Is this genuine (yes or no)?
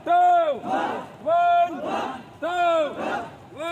yes